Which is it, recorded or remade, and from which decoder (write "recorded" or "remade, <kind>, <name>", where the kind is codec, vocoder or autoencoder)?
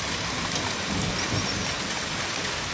recorded